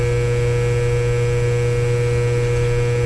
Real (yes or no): yes